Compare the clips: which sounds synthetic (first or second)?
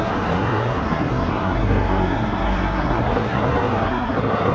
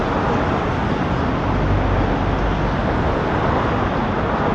first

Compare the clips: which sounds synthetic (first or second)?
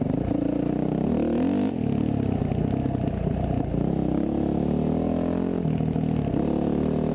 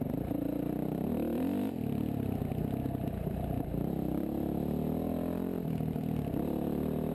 second